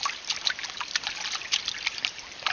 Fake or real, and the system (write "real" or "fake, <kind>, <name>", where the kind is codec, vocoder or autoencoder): fake, vocoder, BigVGAN v2